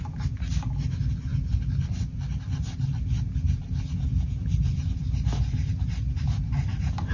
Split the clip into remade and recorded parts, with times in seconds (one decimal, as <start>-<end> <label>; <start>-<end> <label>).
0.0-7.1 recorded